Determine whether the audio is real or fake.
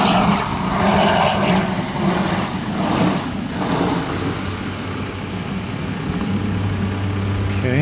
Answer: real